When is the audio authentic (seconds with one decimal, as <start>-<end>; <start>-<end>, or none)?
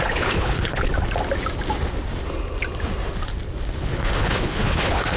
0.9-3.8